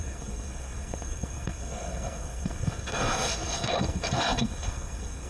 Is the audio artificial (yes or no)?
yes